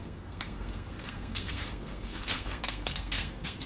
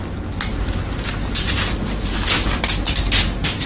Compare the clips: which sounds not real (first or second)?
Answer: first